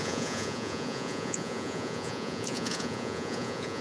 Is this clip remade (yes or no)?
yes